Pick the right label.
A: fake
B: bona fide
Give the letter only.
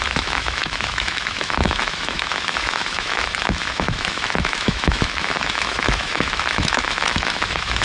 A